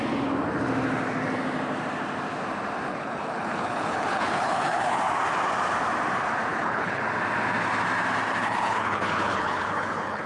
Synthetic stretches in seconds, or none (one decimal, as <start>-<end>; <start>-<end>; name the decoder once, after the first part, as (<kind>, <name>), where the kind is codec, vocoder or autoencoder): 2.9-5.0 (codec, HILCodec); 6.5-7.0; 8.3-10.3